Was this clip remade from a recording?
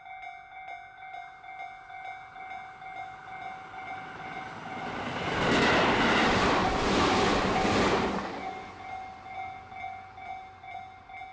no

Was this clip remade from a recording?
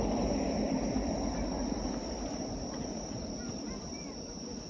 no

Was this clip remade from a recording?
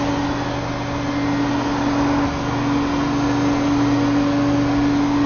no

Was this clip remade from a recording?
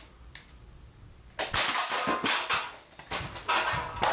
no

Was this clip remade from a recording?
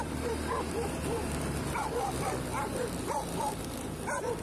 yes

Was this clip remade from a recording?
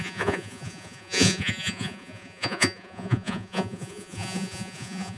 yes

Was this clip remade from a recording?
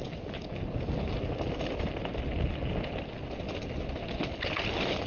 no